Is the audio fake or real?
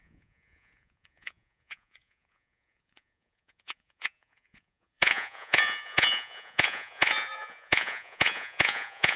fake